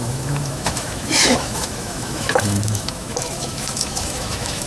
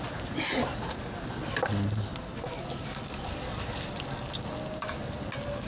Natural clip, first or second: second